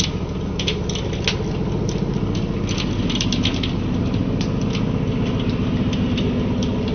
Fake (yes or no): no